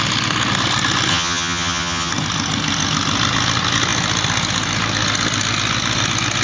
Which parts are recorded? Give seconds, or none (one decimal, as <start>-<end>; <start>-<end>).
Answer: 0.0-1.1; 2.1-6.4